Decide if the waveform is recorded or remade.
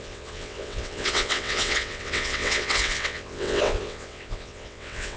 remade